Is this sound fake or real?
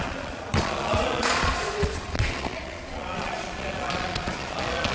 fake